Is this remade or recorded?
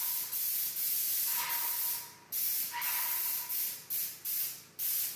recorded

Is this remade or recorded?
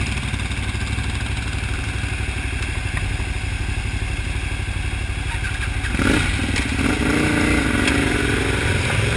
recorded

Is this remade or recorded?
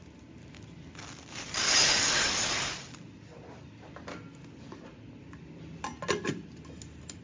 recorded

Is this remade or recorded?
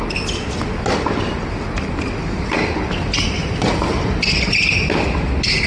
recorded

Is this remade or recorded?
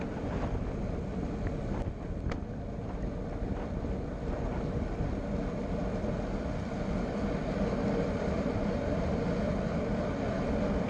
recorded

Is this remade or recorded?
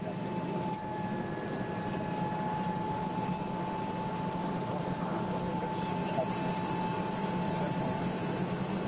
recorded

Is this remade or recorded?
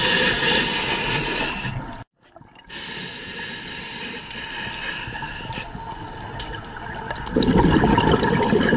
recorded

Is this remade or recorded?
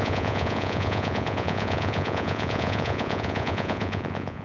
remade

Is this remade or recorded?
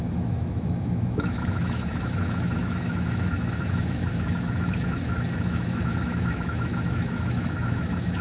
remade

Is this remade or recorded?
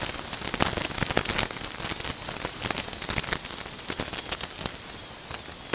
recorded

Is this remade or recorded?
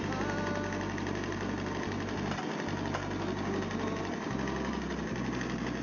recorded